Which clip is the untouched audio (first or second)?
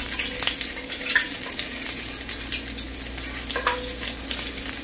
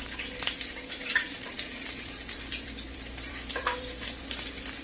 first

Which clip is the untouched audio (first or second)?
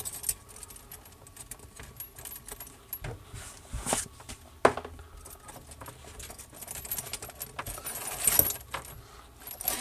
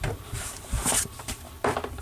first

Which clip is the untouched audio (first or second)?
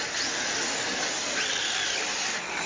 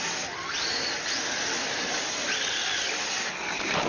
first